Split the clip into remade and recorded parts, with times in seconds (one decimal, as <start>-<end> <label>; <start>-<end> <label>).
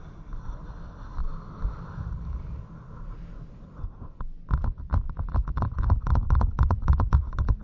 0.0-7.6 recorded